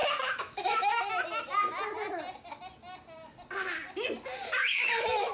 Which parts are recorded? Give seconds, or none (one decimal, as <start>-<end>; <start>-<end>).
1.1-4.6